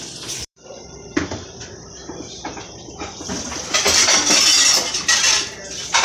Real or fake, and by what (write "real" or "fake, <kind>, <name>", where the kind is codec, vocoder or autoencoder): fake, vocoder, BigVGAN v2